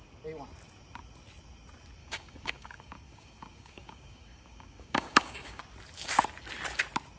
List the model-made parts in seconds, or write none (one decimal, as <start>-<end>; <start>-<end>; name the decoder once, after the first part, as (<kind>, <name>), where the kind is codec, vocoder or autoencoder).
2.0-5.6 (codec, DAC)